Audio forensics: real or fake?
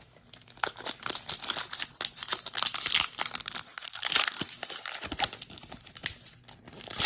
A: real